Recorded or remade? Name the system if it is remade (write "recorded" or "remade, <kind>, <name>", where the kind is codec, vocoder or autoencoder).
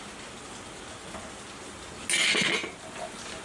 recorded